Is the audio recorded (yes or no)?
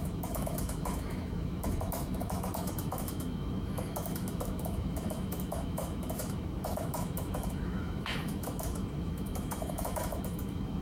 no